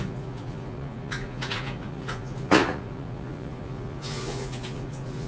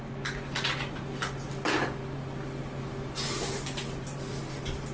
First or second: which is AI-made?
first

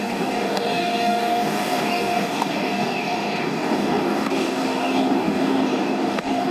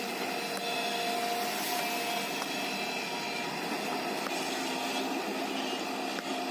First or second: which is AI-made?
first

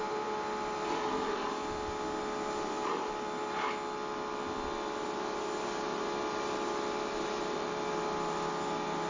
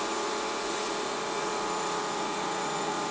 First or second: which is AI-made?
second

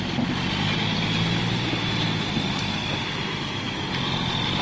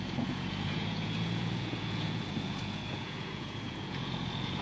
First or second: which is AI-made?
second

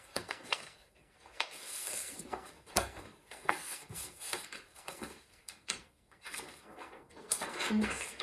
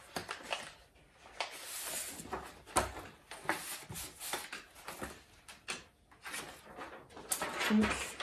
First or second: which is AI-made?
first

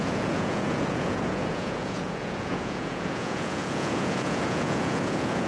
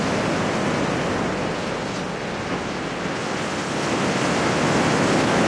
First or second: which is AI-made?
first